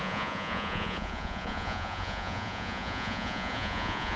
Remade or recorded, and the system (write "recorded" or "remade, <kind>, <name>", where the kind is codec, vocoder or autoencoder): remade, vocoder, Vocos